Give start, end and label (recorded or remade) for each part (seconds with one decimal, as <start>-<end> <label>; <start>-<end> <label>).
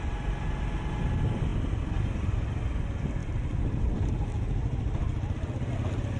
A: 0.0-6.2 recorded